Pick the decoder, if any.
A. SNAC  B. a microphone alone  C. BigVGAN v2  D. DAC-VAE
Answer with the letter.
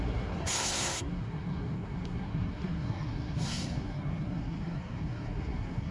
A